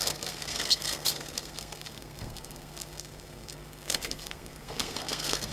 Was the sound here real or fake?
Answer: fake